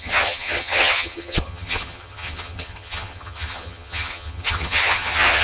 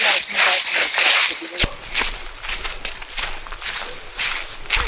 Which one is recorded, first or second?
second